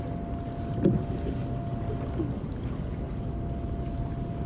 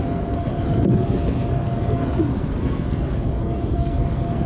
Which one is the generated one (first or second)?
second